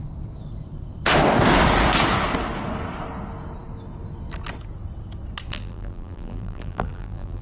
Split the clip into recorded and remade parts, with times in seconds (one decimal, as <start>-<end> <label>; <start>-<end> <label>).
0.0-5.5 recorded; 5.5-7.4 remade